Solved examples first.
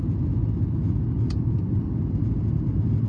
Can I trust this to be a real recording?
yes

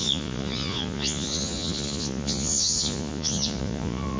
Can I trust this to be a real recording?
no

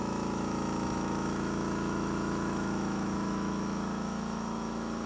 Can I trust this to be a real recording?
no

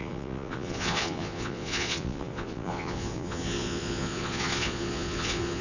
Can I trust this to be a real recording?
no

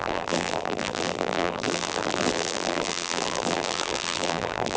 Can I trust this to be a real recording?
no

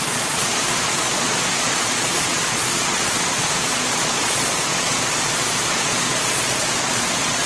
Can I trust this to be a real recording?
no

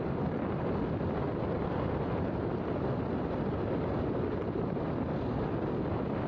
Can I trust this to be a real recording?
yes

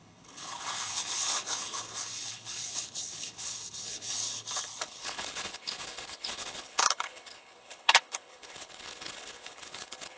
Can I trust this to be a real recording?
no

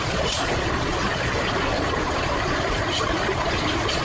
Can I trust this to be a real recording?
no